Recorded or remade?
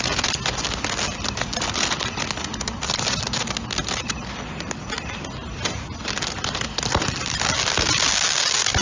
recorded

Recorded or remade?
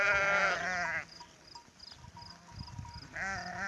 recorded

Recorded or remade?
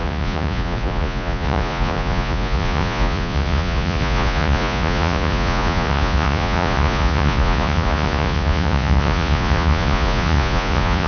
remade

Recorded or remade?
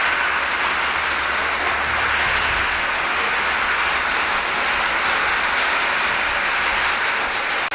recorded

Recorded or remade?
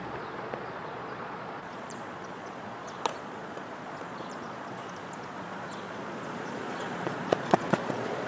remade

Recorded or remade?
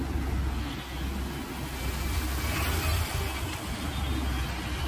recorded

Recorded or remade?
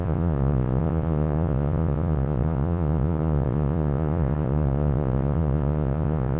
remade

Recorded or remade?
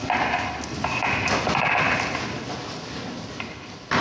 recorded